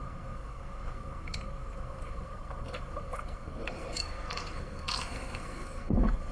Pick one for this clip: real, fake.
fake